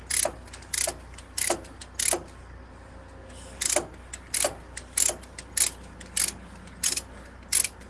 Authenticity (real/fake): real